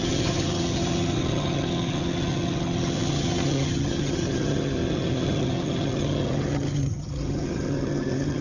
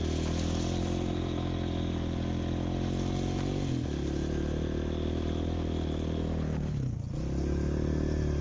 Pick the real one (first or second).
second